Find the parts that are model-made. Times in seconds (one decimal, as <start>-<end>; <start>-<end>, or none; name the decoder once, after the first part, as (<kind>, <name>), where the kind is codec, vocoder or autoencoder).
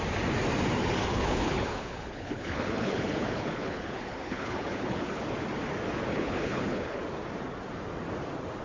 1.1-5.2 (codec, HILCodec); 6.1-7.0